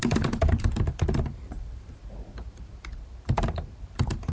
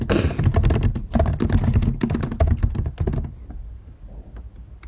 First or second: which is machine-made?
first